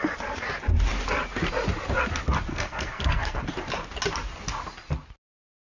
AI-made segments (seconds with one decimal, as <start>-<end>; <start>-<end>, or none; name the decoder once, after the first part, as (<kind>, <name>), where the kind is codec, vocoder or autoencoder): 2.5-3.4 (codec, SNAC)